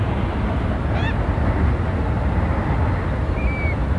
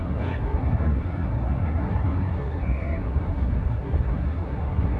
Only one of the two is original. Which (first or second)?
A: first